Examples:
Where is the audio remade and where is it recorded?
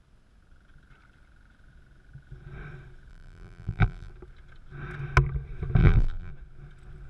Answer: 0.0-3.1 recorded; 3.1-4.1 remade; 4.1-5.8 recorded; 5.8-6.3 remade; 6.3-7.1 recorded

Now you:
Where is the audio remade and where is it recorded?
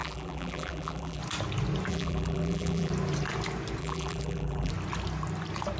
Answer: 0.0-1.2 remade; 1.2-1.9 recorded; 1.9-2.9 remade; 2.9-3.8 recorded; 3.8-4.7 remade; 4.7-5.8 recorded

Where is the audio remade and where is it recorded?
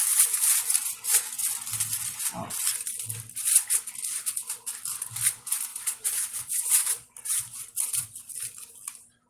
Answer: 0.0-5.7 recorded; 5.7-8.2 remade; 8.2-9.3 recorded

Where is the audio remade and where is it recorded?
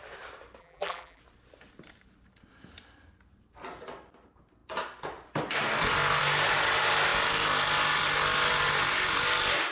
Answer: 0.0-0.6 recorded; 0.6-1.2 remade; 1.2-9.7 recorded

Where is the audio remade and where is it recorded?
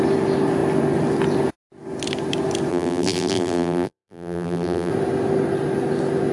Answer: 0.0-2.7 recorded; 2.7-4.9 remade; 4.9-6.3 recorded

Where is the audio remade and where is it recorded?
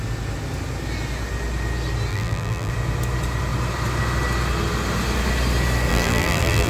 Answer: 0.0-2.1 recorded; 2.1-2.7 remade; 2.7-5.9 recorded; 5.9-6.7 remade